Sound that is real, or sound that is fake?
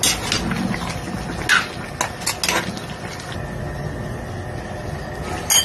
real